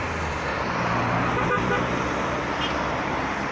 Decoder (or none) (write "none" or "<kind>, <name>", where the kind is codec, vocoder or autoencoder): vocoder, BigVGAN v2